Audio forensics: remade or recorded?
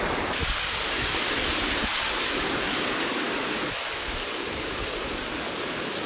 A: remade